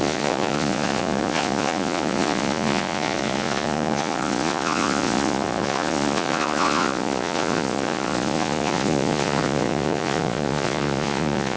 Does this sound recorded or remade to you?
remade